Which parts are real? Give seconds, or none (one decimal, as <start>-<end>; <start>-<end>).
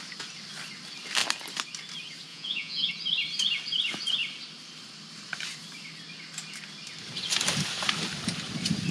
0.0-2.3; 2.9-8.9